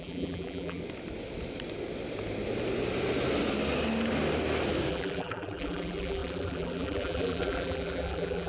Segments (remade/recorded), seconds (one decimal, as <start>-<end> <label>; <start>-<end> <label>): 0.0-0.8 remade; 0.8-4.9 recorded; 4.9-8.5 remade